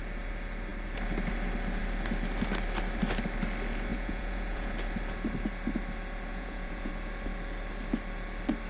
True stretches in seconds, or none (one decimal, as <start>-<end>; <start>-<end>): 0.0-3.9; 4.7-6.3; 6.9-8.7